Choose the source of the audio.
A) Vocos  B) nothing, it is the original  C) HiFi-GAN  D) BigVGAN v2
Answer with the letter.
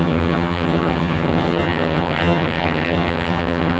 C